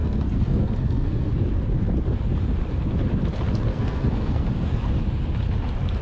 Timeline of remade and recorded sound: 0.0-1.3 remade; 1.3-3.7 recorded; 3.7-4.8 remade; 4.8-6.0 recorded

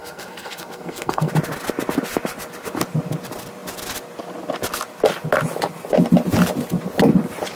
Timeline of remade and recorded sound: 0.0-1.3 remade; 1.3-7.6 recorded

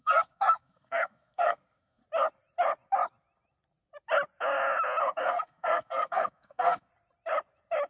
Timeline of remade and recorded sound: 0.0-2.0 remade; 2.0-5.0 recorded; 5.0-6.9 remade; 6.9-7.9 recorded

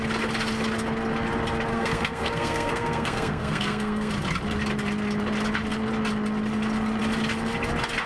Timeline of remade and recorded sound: 0.0-1.7 recorded; 1.7-4.1 remade; 4.1-8.1 recorded

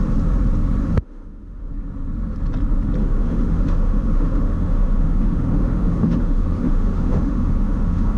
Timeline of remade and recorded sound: 0.0-0.8 recorded; 0.8-1.7 remade; 1.7-3.0 recorded; 3.0-8.2 remade

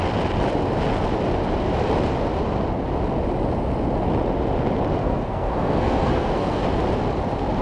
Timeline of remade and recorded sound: 0.0-5.0 recorded; 5.0-6.6 remade; 6.6-7.6 recorded

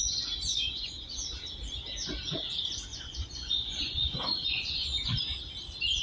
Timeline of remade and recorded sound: 0.0-0.5 recorded; 0.5-1.1 remade; 1.1-2.9 recorded; 2.9-5.2 remade; 5.2-6.0 recorded